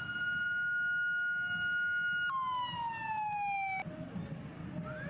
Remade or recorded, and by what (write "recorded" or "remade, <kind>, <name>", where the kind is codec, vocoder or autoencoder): recorded